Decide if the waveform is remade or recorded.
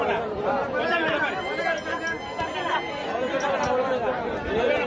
recorded